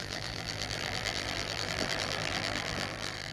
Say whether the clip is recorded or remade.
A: remade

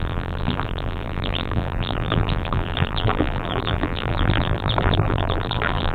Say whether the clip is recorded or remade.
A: remade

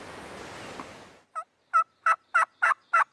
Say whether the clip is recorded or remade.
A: recorded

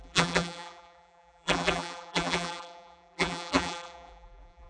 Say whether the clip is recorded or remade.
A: remade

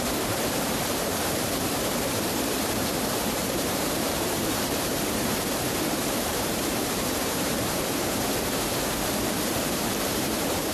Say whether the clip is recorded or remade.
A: remade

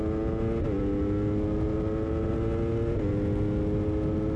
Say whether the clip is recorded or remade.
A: recorded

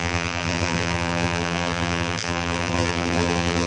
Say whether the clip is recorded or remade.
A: remade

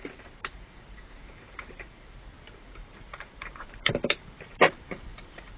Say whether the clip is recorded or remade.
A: remade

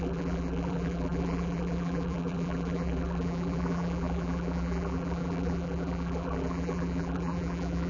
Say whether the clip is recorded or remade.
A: remade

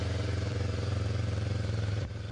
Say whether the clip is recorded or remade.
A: remade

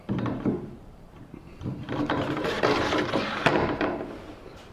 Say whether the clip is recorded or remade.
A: remade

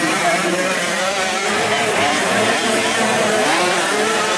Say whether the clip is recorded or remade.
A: remade